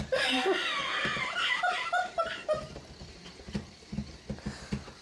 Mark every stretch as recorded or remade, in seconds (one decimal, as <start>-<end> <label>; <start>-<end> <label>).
0.0-0.8 recorded; 0.8-3.7 remade; 3.7-5.0 recorded

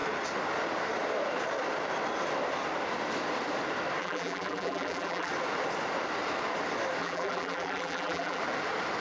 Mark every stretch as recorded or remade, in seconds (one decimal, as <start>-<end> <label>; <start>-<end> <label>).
0.0-4.0 recorded; 4.0-5.3 remade; 5.3-7.0 recorded; 7.0-8.4 remade; 8.4-9.0 recorded

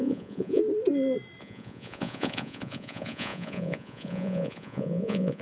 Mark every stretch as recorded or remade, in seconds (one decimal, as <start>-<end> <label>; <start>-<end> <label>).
0.0-0.6 remade; 0.6-1.4 recorded; 1.4-5.4 remade

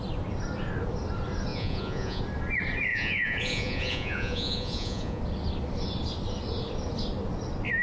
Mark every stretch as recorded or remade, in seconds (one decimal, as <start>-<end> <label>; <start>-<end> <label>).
0.0-1.5 recorded; 1.5-2.2 remade; 2.2-2.9 recorded; 2.9-5.2 remade; 5.2-7.8 recorded

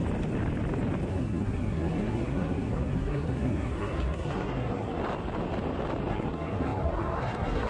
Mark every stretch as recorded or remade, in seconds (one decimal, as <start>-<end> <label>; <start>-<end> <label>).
0.0-1.1 recorded; 1.1-5.0 remade; 5.0-6.1 recorded; 6.1-7.7 remade

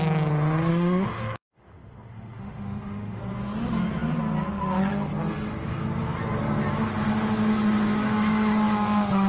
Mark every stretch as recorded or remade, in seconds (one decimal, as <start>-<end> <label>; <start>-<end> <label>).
0.0-0.7 recorded; 0.7-3.2 remade; 3.2-9.3 recorded